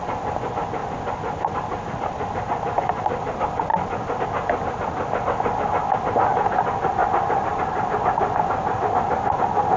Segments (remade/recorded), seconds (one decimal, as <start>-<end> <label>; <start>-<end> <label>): 0.0-3.7 recorded; 3.7-4.2 remade; 4.2-9.8 recorded